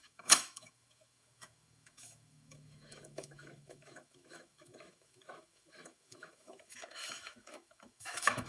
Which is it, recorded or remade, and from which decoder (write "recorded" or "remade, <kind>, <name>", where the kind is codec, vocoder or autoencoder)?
remade, autoencoder, DAC-VAE